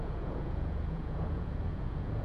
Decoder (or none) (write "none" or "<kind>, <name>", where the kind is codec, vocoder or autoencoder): vocoder, Vocos